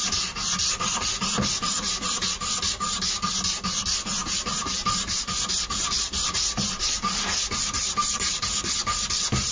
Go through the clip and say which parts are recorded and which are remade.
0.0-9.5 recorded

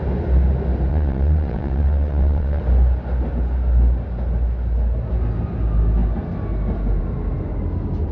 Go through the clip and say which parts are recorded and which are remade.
0.0-0.9 recorded; 0.9-2.6 remade; 2.6-8.1 recorded

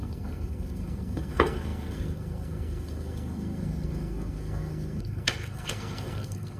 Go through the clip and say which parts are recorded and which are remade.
0.0-6.6 remade

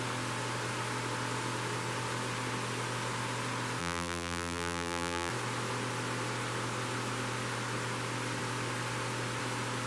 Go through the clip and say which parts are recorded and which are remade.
0.0-3.8 recorded; 3.8-5.3 remade; 5.3-9.9 recorded